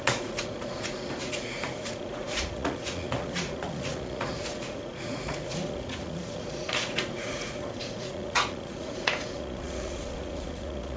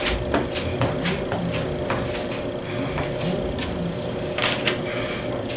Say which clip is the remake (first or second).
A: first